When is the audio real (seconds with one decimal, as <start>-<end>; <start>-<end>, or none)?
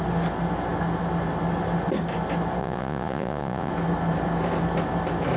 0.0-2.6; 3.7-5.4